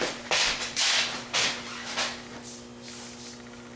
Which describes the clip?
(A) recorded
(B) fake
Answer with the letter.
A